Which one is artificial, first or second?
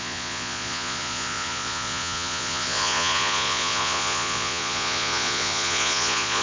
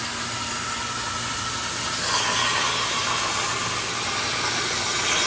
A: first